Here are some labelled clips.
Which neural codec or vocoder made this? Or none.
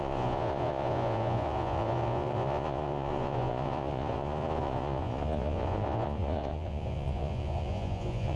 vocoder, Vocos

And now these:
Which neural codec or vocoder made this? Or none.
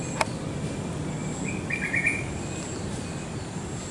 none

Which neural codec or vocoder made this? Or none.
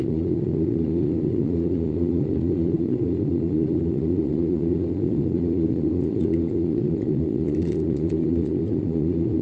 vocoder, Vocos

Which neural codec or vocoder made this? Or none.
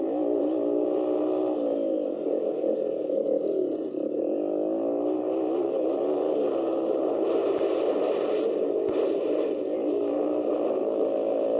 none